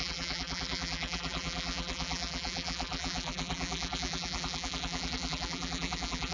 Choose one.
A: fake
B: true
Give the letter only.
A